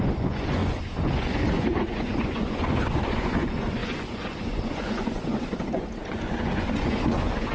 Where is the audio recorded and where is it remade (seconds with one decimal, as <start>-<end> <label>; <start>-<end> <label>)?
0.0-7.5 remade